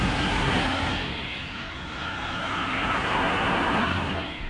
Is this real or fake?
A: fake